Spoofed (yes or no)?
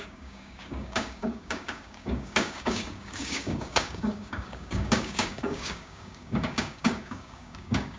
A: yes